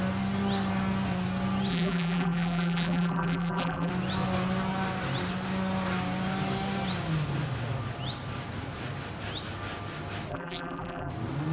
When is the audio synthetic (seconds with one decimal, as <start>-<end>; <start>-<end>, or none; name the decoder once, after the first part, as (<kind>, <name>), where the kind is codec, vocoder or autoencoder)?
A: 1.7-3.9 (vocoder, BigVGAN v2); 10.3-11.1